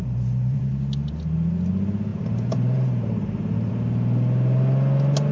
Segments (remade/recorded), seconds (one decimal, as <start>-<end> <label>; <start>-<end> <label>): 0.0-0.7 remade; 0.7-2.1 recorded; 2.1-3.7 remade; 3.7-5.3 recorded